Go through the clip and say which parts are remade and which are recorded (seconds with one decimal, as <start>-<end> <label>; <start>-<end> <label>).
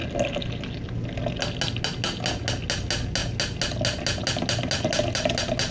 0.0-5.7 recorded